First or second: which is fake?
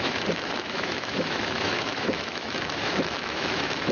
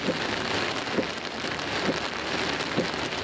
first